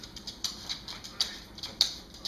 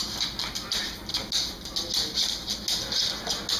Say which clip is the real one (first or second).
second